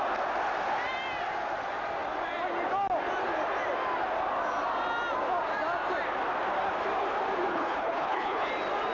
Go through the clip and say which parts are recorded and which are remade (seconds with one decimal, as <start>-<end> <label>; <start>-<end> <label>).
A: 0.0-7.5 recorded; 7.5-8.5 remade; 8.5-8.9 recorded